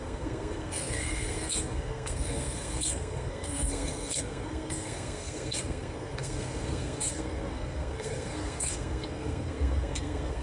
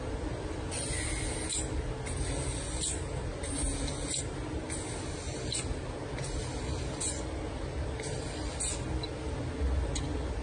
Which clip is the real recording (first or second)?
second